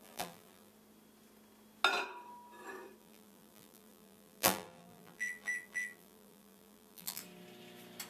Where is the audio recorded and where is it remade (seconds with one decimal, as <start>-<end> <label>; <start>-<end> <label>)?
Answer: 0.0-0.7 remade; 0.7-3.0 recorded; 3.0-7.2 remade; 7.2-8.1 recorded